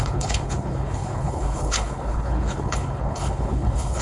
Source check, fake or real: fake